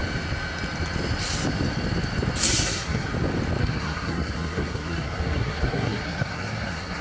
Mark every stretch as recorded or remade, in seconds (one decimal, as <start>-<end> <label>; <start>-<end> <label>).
0.0-2.4 recorded; 2.4-3.1 remade; 3.1-3.6 recorded; 3.6-7.0 remade